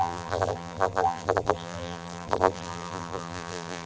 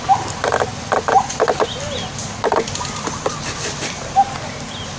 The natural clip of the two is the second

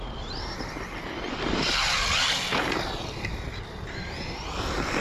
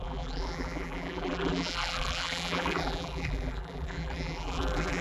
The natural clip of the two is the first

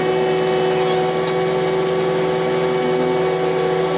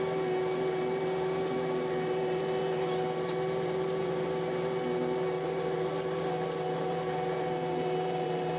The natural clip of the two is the first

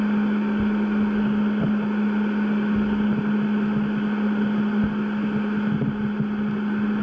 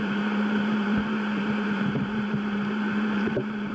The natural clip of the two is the first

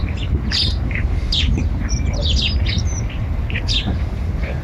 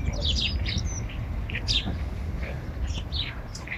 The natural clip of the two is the second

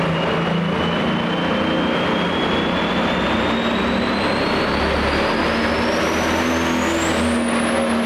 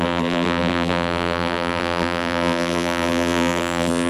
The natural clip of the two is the first